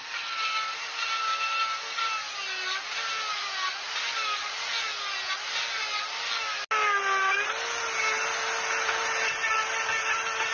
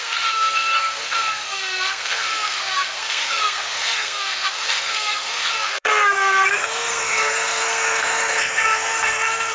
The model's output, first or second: second